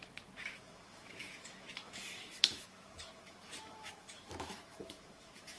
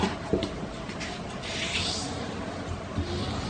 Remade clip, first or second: first